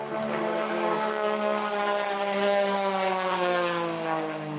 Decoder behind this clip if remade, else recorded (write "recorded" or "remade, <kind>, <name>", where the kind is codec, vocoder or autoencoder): remade, codec, DAC